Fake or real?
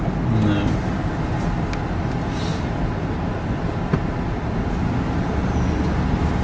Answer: real